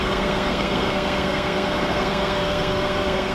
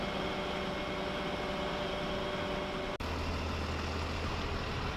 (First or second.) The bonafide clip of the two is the second